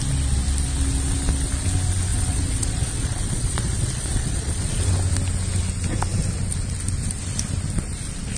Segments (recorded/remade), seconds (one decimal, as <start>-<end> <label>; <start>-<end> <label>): 0.0-2.1 recorded; 2.1-4.9 remade; 4.9-8.4 recorded